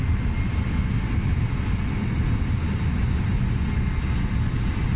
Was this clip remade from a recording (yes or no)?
no